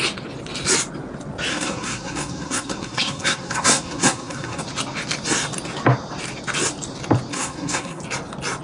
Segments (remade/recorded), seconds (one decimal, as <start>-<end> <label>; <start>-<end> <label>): 0.0-1.5 recorded; 1.5-4.6 remade; 4.6-7.3 recorded; 7.3-8.0 remade; 8.0-8.6 recorded